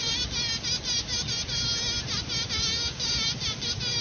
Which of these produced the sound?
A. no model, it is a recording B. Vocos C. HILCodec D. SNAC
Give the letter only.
A